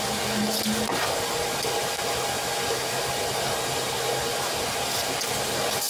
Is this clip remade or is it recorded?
recorded